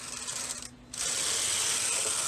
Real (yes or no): yes